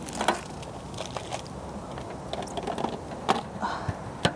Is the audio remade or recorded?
recorded